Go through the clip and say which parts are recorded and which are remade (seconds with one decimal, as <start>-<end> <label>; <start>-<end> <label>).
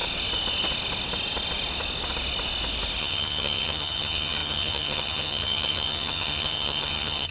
0.0-3.0 recorded; 3.0-7.3 remade